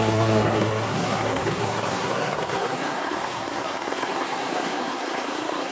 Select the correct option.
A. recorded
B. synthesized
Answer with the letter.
B